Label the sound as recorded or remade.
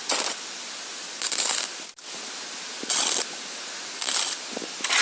recorded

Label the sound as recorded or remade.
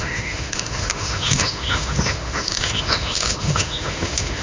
remade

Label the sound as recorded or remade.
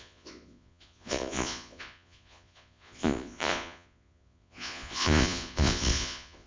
remade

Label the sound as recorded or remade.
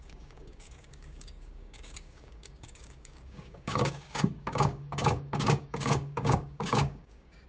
remade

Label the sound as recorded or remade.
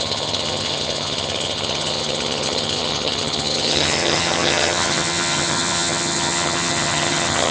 remade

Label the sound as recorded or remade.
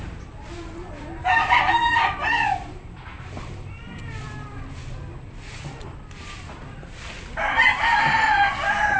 remade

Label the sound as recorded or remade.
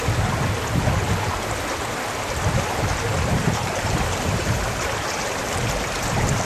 recorded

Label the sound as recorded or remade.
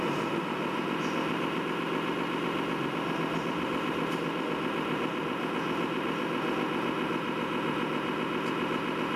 recorded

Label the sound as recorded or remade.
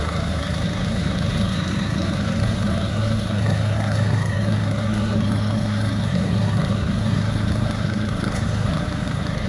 remade